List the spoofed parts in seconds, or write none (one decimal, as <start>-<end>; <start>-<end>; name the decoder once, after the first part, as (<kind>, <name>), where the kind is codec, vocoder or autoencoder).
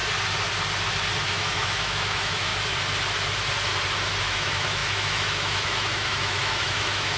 1.2-2.5 (autoencoder, DAC-VAE); 4.2-7.2